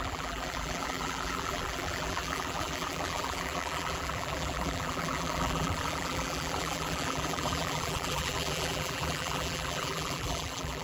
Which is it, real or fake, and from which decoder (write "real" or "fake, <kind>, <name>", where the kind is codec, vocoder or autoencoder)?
fake, vocoder, BigVGAN v2